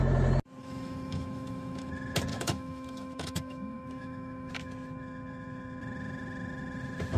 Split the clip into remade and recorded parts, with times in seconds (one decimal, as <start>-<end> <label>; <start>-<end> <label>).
0.0-0.6 recorded; 0.6-1.9 remade; 1.9-2.3 recorded; 2.3-4.5 remade; 4.5-7.2 recorded